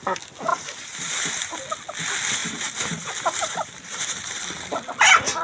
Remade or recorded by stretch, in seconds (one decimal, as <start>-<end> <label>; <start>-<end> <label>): 0.0-0.5 recorded; 0.5-1.6 remade; 1.6-2.4 recorded; 2.4-4.4 remade; 4.4-5.4 recorded